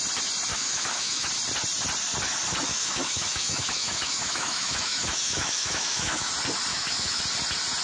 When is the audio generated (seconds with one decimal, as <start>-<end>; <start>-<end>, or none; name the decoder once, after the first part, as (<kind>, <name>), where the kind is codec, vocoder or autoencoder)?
0.5-1.3 (autoencoder, DAC-VAE); 2.7-6.3; 6.7-7.2